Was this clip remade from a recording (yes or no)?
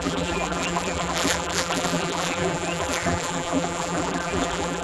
yes